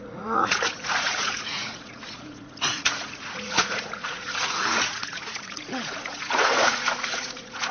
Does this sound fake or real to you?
fake